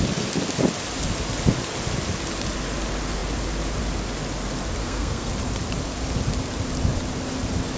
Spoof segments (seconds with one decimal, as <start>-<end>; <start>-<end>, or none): 4.8-5.3